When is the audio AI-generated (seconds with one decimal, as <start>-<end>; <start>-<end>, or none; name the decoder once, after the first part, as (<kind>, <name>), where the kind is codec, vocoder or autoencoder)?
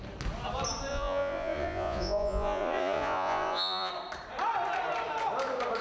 0.9-3.9 (vocoder, Vocos)